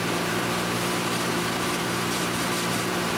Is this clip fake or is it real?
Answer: fake